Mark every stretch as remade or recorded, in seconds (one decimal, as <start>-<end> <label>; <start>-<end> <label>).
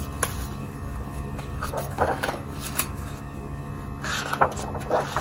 0.0-0.6 recorded; 0.6-3.7 remade; 3.7-5.2 recorded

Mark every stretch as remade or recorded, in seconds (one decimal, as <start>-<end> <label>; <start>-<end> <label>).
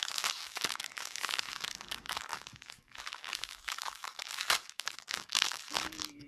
0.0-6.3 remade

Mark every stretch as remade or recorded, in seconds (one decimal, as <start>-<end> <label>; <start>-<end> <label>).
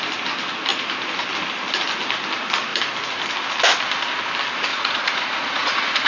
0.0-4.7 recorded; 4.7-6.1 remade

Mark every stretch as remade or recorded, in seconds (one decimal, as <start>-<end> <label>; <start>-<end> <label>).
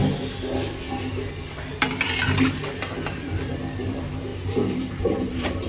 0.0-2.9 recorded; 2.9-5.7 remade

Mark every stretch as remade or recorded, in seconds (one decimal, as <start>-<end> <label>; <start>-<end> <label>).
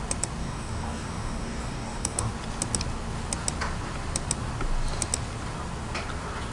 0.0-0.4 recorded; 0.4-2.3 remade; 2.3-6.5 recorded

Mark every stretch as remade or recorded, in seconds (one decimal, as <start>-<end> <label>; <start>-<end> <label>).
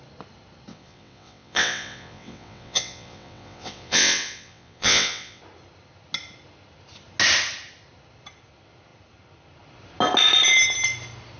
0.0-0.7 recorded; 0.7-5.4 remade; 5.4-11.4 recorded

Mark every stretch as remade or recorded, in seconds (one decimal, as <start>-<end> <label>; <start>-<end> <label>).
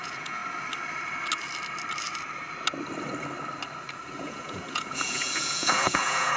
0.0-0.4 remade; 0.4-4.2 recorded; 4.2-6.4 remade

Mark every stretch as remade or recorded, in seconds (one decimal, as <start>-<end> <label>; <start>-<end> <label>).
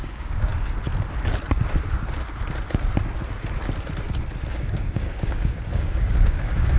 0.0-0.5 remade; 0.5-4.5 recorded; 4.5-6.8 remade